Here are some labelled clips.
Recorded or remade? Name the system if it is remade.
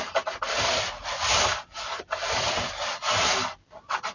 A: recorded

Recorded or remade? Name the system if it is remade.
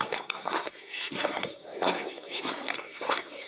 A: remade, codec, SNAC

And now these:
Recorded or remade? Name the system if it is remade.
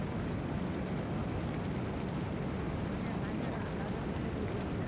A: recorded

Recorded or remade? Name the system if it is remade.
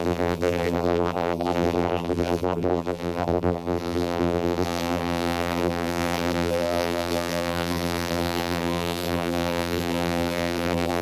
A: remade, vocoder, BigVGAN v2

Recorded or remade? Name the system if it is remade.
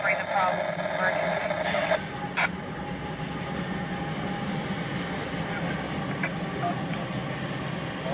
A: recorded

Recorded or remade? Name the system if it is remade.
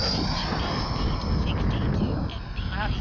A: recorded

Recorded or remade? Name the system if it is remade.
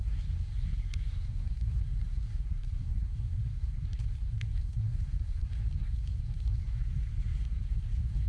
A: remade, codec, SNAC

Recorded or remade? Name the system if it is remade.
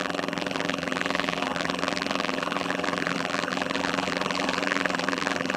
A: remade, vocoder, BigVGAN v2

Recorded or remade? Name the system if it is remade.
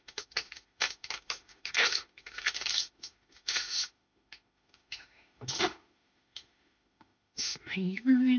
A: remade, autoencoder, DAC-VAE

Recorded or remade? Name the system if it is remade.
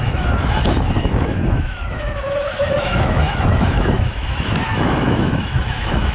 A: remade, autoencoder, DAC-VAE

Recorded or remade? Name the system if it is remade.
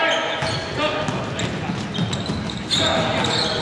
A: recorded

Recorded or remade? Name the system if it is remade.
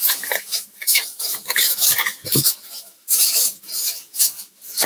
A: remade, autoencoder, DAC-VAE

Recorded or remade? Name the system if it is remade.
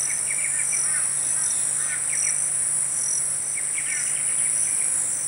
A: recorded